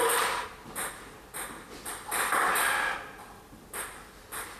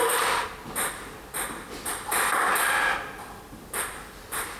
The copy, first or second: second